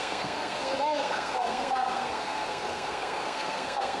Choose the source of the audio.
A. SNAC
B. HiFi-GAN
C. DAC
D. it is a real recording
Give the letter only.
A